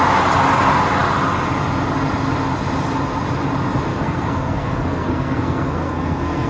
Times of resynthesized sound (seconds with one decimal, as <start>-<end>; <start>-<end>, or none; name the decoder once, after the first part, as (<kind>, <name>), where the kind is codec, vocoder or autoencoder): 3.9-6.5 (codec, SNAC)